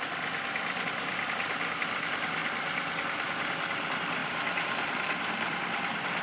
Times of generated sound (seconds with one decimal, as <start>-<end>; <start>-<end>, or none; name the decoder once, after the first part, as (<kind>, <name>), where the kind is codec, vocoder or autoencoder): 0.0-2.4 (vocoder, BigVGAN v2); 3.5-6.2